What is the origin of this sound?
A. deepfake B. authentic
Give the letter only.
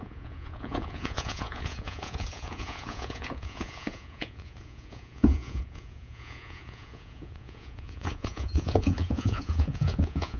A